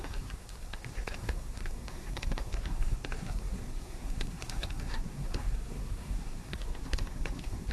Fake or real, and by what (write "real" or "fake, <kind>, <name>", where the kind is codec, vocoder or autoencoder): fake, codec, SNAC